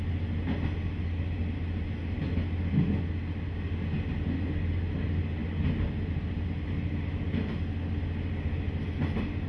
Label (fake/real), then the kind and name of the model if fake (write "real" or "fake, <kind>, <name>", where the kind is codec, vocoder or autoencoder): real